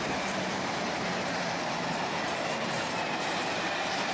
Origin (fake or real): fake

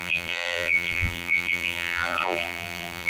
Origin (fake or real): fake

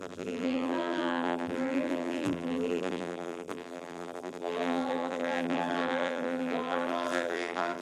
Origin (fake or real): fake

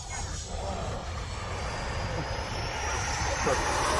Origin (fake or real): real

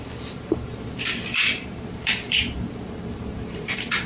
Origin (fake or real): fake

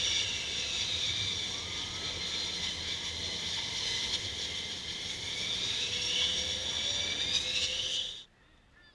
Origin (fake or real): real